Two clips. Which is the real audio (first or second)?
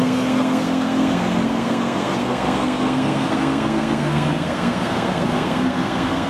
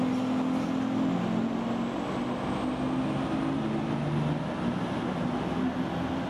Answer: second